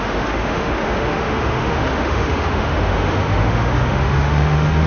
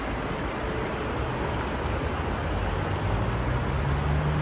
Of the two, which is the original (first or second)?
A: second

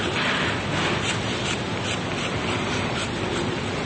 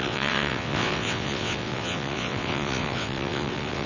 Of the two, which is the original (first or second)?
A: first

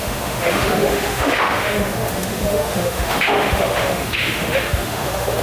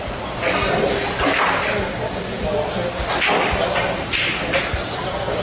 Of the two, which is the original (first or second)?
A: second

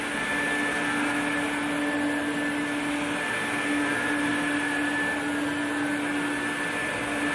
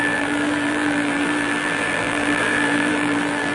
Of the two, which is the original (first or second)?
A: first